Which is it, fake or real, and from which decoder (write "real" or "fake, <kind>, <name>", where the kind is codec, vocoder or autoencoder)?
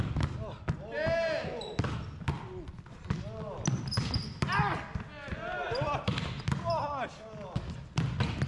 real